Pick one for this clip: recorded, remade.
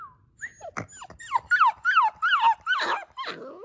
recorded